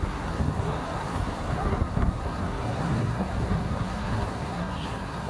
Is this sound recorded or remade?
remade